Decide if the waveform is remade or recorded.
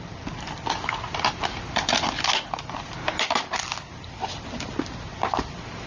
recorded